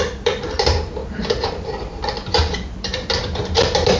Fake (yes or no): yes